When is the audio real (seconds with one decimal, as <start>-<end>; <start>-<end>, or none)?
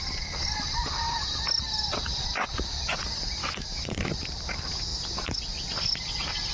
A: 0.0-3.4; 4.1-6.5